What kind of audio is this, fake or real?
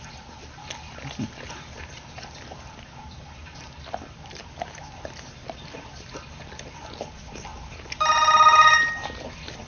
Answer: real